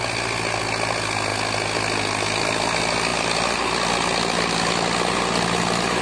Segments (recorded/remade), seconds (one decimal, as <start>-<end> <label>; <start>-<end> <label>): 0.0-6.0 recorded